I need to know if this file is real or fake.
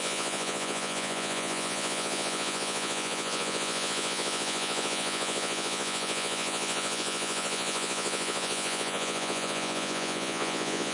fake